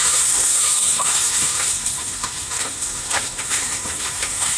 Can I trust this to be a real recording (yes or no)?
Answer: no